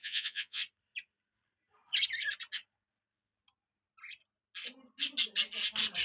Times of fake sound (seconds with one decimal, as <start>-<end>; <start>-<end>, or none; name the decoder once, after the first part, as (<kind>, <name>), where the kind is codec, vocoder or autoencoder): 0.0-0.6 (vocoder, Vocos)